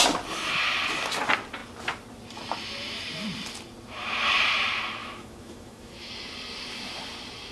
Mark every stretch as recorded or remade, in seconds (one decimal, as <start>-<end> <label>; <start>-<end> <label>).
0.0-5.0 recorded; 5.0-6.1 remade; 6.1-7.5 recorded